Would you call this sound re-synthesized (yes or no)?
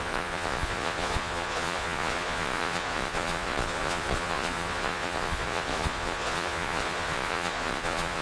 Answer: yes